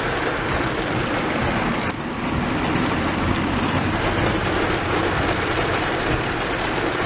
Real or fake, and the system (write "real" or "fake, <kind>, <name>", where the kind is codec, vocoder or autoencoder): fake, vocoder, BigVGAN v2